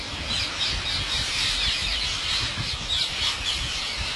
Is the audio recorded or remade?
recorded